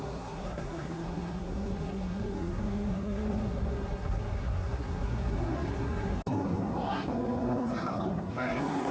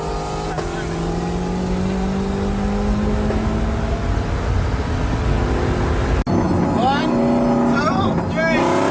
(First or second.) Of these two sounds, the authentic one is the second